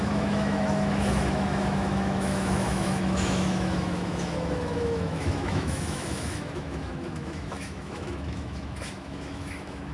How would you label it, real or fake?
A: fake